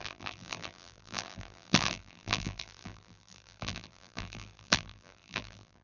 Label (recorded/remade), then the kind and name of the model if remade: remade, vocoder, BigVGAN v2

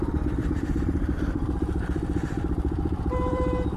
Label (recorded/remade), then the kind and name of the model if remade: remade, vocoder, BigVGAN v2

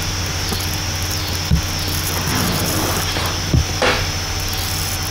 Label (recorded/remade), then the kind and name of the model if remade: recorded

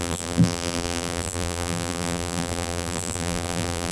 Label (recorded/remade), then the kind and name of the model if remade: remade, vocoder, BigVGAN v2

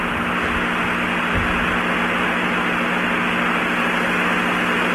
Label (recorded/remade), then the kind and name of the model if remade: recorded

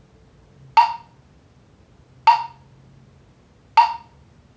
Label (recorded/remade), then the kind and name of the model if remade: recorded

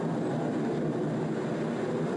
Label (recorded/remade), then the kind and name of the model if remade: recorded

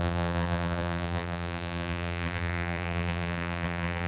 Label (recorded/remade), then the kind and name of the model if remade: remade, vocoder, BigVGAN v2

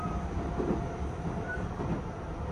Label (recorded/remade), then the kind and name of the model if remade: remade, vocoder, BigVGAN v2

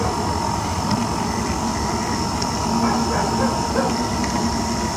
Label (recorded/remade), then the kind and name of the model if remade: recorded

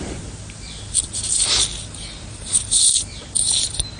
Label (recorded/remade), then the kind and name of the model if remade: remade, vocoder, BigVGAN v2